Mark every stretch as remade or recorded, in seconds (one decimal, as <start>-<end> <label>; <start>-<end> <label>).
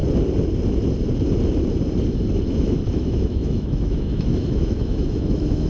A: 0.0-2.5 recorded; 2.5-5.7 remade